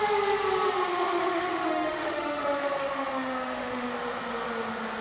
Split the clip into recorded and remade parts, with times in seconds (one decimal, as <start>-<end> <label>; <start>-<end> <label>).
0.0-0.9 recorded; 0.9-3.9 remade; 3.9-5.0 recorded